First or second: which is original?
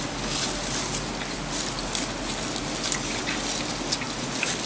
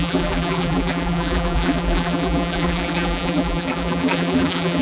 first